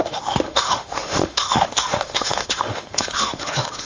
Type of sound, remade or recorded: remade